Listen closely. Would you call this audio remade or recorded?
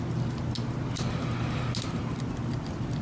recorded